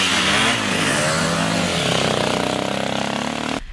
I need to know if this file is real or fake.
real